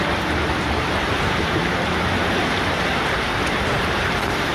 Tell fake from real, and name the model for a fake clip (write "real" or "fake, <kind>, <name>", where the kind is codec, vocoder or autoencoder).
fake, vocoder, BigVGAN v2